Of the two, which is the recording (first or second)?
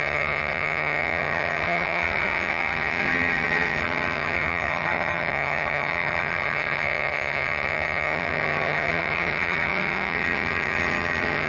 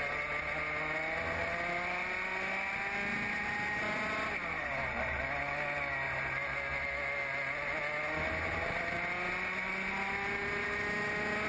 second